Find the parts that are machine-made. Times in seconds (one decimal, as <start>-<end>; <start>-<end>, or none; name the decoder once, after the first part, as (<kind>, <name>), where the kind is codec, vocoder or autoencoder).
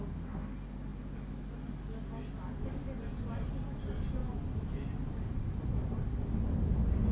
none